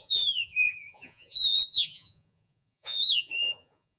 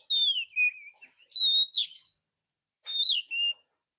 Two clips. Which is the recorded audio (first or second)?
second